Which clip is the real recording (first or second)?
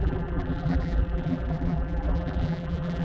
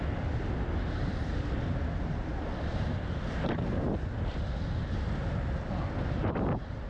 second